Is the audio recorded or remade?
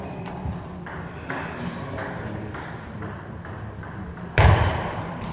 remade